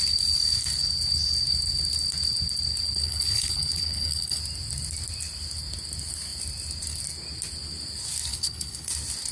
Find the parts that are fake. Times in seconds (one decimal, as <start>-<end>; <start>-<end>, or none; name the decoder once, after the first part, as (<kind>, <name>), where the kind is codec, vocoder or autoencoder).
3.0-4.4 (codec, HILCodec); 8.3-8.9